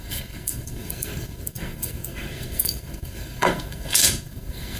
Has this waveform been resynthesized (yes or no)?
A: yes